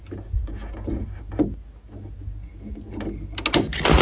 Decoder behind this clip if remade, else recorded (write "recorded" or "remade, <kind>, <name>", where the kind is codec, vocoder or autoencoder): recorded